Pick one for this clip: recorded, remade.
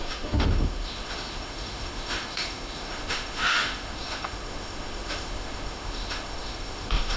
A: remade